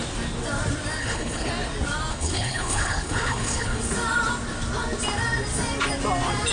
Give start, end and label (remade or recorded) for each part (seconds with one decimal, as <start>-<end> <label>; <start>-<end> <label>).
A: 0.0-1.0 recorded; 1.0-1.5 remade; 1.5-2.1 recorded; 2.1-3.8 remade; 3.8-6.5 recorded